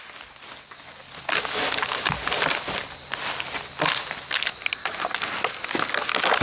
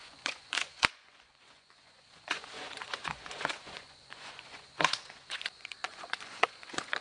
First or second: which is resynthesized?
second